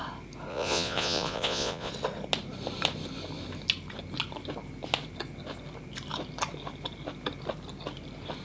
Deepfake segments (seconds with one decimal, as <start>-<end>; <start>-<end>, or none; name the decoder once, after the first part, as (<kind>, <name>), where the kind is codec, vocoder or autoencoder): 0.5-1.9 (vocoder, Vocos)

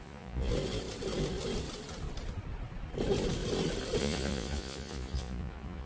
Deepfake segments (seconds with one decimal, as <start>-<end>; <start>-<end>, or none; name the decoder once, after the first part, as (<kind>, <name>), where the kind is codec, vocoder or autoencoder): 0.0-0.5 (vocoder, Vocos); 4.0-5.9

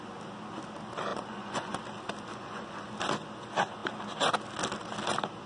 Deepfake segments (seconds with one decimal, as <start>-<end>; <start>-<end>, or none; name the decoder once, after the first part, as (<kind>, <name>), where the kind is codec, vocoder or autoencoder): 1.1-1.8 (vocoder, Vocos); 2.3-2.9